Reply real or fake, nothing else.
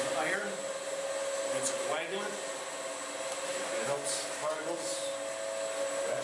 real